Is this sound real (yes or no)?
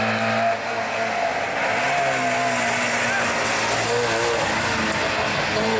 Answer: yes